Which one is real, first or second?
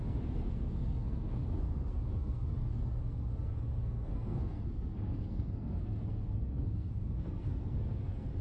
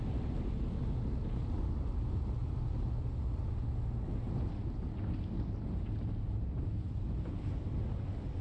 second